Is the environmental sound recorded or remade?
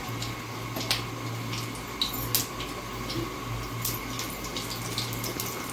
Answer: recorded